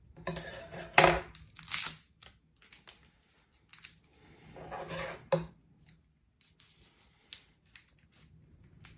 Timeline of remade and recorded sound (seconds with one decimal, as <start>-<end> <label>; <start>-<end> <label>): 0.0-9.0 recorded